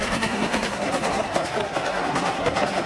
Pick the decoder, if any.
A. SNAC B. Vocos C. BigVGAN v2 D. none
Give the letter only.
A